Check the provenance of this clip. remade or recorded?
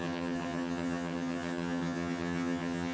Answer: remade